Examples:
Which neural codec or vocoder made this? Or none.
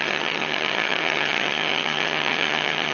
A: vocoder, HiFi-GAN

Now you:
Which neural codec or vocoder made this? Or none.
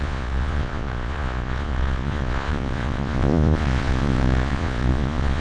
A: vocoder, Vocos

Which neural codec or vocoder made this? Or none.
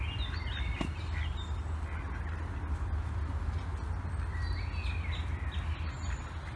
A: none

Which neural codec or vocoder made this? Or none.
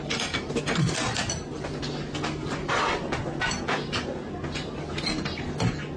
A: none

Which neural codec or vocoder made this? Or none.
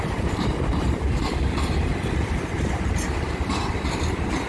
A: vocoder, BigVGAN v2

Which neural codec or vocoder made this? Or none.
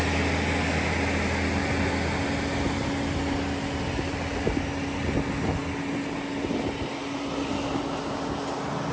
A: none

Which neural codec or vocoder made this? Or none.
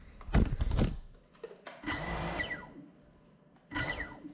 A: vocoder, BigVGAN v2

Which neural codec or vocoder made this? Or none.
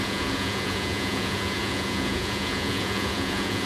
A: vocoder, Vocos